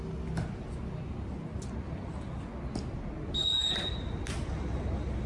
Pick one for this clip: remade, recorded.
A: recorded